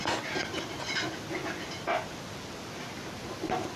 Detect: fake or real real